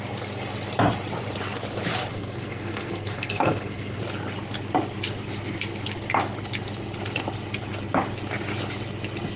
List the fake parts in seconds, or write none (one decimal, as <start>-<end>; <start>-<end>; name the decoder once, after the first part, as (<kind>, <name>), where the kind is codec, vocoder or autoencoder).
2.1-4.0 (codec, SNAC)